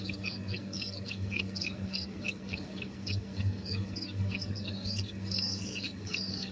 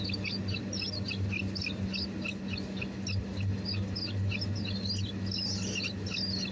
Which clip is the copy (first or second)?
first